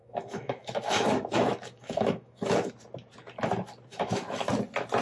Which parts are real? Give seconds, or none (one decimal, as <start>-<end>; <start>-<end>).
2.7-3.9; 4.5-5.0